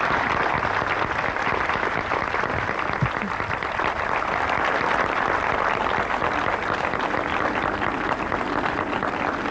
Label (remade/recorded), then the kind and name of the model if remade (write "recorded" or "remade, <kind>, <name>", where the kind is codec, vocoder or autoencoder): recorded